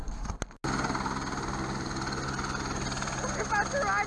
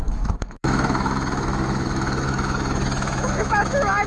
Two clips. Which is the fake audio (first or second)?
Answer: second